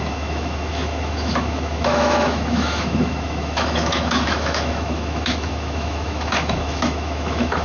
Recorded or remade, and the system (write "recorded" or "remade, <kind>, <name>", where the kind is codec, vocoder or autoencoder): remade, autoencoder, DAC-VAE